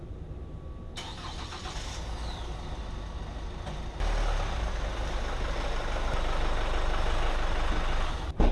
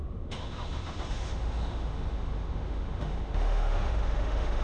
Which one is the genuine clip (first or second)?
first